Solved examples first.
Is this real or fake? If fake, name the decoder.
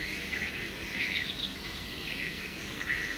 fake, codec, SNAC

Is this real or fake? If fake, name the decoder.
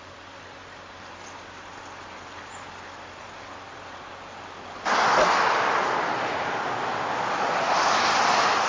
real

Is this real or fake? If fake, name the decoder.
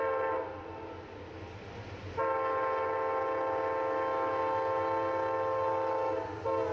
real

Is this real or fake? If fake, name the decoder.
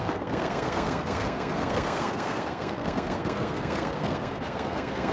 fake, codec, SNAC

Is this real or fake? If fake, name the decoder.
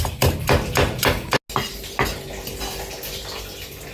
real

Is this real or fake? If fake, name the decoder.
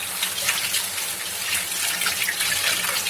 real